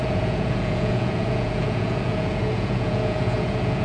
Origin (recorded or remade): remade